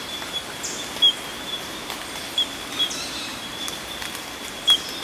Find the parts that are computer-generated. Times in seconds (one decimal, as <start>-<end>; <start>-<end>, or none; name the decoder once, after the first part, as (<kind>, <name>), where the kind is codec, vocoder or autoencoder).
1.3-2.2 (vocoder, BigVGAN v2)